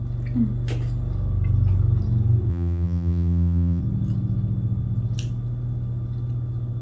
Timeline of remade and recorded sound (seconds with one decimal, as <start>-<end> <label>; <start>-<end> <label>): 0.0-2.5 recorded; 2.5-3.8 remade; 3.8-6.8 recorded